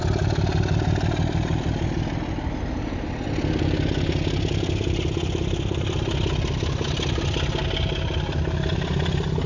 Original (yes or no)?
yes